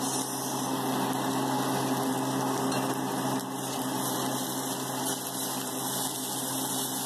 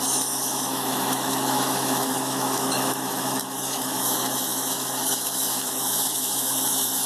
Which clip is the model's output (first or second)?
second